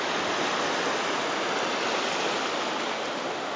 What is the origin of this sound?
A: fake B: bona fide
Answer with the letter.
B